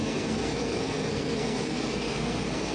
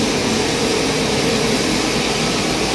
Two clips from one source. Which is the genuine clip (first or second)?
second